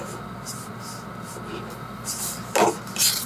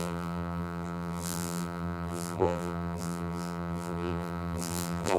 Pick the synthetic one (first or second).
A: second